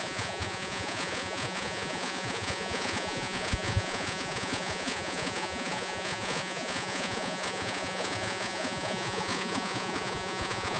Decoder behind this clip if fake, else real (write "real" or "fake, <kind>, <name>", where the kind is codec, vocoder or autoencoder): fake, vocoder, Vocos